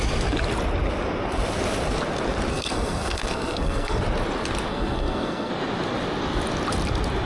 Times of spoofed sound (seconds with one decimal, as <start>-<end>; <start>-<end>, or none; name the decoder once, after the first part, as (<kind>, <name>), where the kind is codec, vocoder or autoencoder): 2.5-4.0 (codec, SNAC); 4.7-5.5